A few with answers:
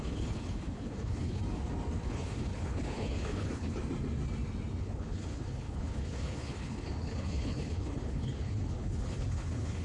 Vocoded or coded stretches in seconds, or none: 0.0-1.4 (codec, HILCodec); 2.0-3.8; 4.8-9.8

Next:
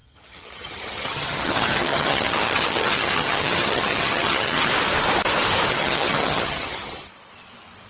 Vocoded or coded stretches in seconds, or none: 0.0-4.7 (vocoder, HiFi-GAN); 5.7-7.1